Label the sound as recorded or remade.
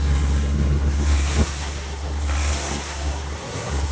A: remade